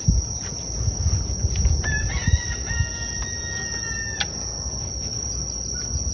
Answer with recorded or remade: recorded